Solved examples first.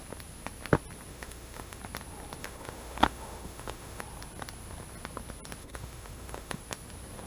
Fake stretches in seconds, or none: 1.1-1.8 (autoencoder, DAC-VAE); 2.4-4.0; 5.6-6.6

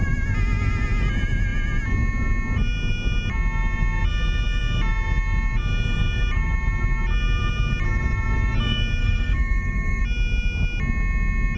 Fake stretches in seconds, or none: 9.0-10.0 (codec, DAC)

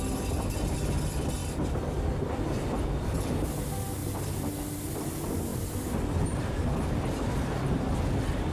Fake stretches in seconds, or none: 1.4-2.5 (vocoder, BigVGAN v2); 5.5-6.4

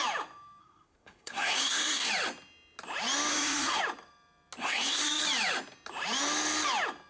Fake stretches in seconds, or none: 0.6-2.1 (codec, SNAC); 3.3-3.8; 4.6-5.2

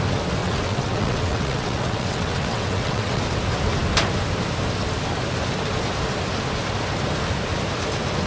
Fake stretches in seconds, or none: 0.4-3.2 (vocoder, WaveNeXt)

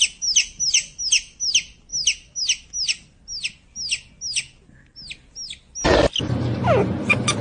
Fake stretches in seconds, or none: none